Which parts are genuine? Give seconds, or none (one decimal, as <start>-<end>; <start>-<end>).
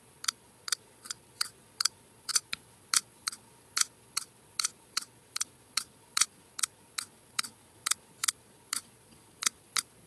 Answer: none